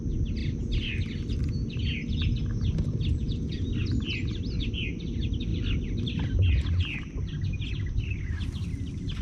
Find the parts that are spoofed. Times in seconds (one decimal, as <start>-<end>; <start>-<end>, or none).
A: 0.4-1.8; 3.8-4.9; 5.5-6.5